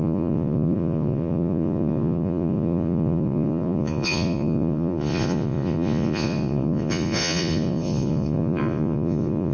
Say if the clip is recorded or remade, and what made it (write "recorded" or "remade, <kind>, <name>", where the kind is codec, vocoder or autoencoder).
remade, vocoder, Vocos